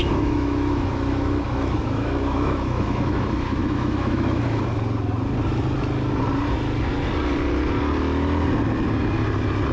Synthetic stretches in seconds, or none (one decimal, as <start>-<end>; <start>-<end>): 0.0-4.6

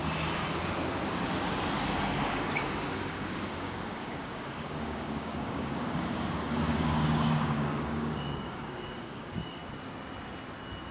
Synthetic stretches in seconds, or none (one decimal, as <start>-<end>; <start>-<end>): 2.3-9.6

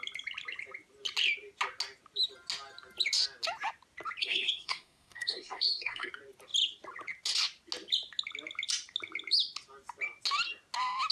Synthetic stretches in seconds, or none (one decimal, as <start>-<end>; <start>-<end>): 4.2-6.1

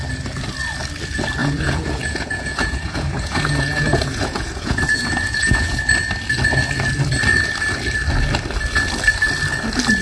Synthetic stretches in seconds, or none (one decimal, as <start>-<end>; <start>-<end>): 1.4-5.8